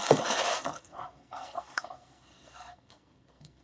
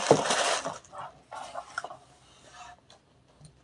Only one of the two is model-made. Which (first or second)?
first